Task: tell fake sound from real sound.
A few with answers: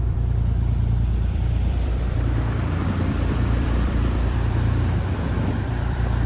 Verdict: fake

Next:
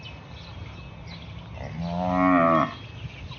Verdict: real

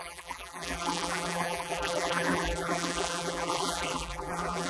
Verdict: fake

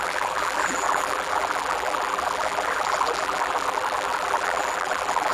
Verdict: fake